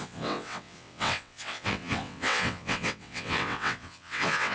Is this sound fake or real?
fake